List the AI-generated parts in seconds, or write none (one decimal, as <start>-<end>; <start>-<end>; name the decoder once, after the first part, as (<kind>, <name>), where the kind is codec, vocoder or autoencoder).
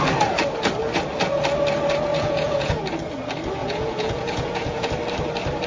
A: 2.1-2.8 (vocoder, Vocos); 3.6-4.9